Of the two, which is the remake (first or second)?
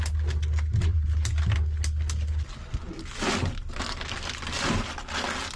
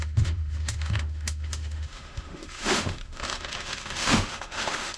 second